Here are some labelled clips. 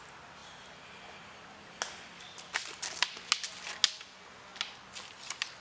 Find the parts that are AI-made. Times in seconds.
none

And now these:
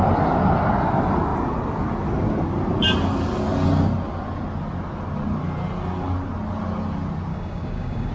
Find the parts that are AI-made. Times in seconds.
7.3-8.1 (codec, DAC)

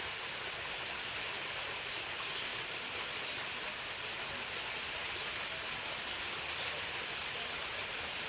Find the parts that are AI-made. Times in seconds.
none

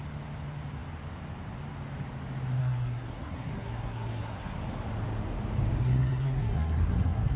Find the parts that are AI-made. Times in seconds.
2.6-4.6 (codec, SNAC); 5.8-7.4

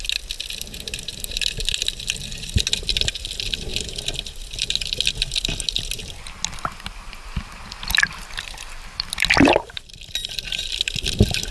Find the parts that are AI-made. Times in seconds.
1.1-2.5 (vocoder, BigVGAN v2); 8.2-9.9